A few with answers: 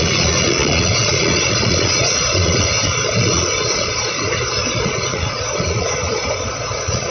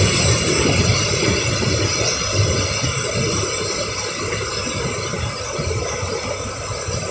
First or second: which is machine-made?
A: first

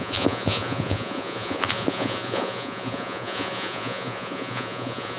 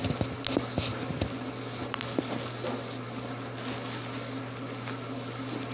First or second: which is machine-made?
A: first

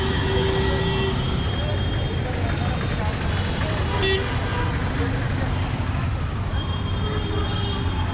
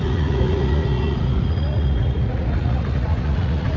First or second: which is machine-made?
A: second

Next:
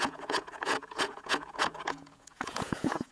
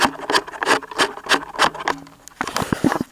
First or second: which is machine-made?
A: first